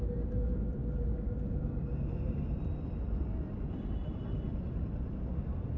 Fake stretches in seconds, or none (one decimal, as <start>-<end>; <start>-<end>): none